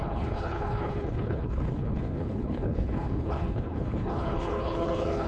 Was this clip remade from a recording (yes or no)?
yes